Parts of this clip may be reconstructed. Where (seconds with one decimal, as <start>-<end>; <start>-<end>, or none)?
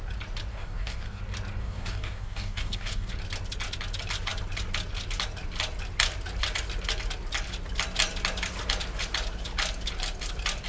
0.5-1.2; 1.6-3.1